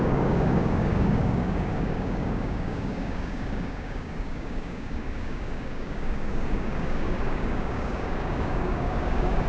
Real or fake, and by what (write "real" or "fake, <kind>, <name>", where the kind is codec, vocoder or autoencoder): fake, codec, DAC